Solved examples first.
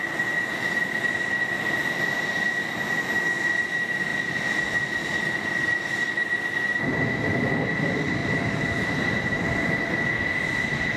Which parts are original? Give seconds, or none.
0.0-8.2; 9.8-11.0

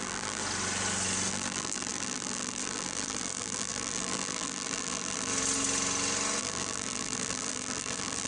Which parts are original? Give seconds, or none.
0.4-1.3; 5.3-6.4